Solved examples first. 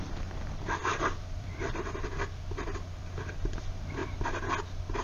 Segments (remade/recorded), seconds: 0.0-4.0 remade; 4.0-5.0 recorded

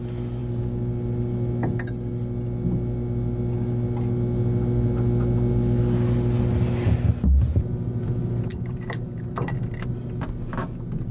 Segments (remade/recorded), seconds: 0.0-8.5 recorded; 8.5-9.3 remade; 9.3-11.1 recorded